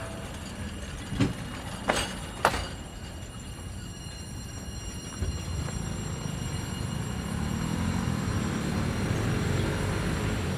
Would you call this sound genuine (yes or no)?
yes